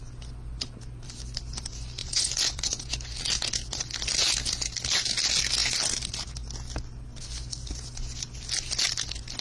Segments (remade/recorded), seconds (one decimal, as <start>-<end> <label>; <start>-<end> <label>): 0.0-2.0 recorded; 2.0-2.8 remade; 2.8-9.4 recorded